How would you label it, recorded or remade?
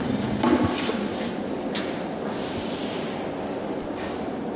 recorded